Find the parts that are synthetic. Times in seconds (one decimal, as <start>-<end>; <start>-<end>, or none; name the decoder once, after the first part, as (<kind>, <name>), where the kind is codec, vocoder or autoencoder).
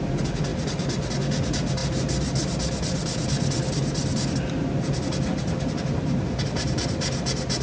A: none